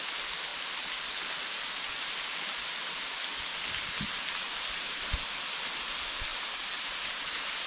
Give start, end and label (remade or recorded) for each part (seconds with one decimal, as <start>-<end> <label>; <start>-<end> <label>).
0.0-6.3 recorded; 6.3-7.7 remade